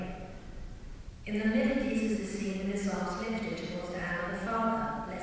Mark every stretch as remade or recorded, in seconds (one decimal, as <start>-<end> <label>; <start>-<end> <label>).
0.0-5.2 remade